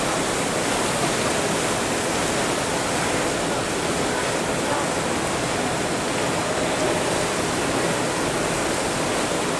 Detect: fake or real real